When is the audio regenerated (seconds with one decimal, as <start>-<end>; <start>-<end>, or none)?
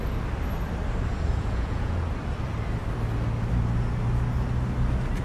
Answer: 1.1-2.0